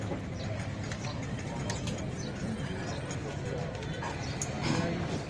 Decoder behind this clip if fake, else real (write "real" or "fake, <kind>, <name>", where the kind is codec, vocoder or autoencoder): real